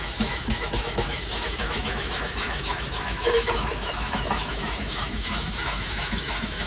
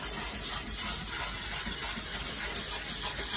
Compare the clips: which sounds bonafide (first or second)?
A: second